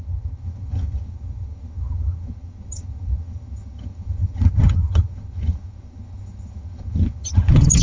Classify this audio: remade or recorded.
remade